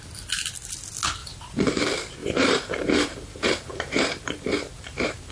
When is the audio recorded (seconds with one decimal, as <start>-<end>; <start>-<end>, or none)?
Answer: 0.0-1.2; 1.8-2.2